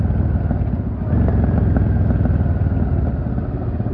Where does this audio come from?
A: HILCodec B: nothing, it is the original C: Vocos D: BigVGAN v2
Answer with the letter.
B